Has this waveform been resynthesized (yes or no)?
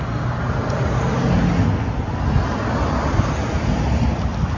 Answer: no